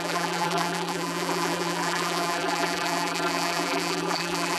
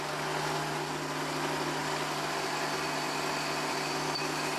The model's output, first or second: first